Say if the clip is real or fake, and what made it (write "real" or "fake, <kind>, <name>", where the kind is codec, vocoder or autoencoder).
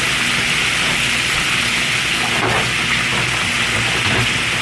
real